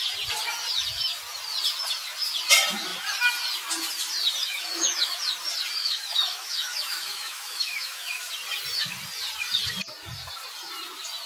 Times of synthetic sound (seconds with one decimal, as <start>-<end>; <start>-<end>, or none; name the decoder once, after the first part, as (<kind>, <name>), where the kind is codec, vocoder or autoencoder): 4.4-5.2 (autoencoder, DAC-VAE); 5.8-8.3